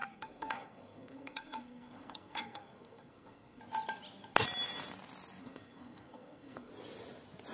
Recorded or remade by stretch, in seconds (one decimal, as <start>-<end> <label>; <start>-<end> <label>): 0.0-3.6 remade; 3.6-5.4 recorded; 5.4-6.7 remade; 6.7-7.5 recorded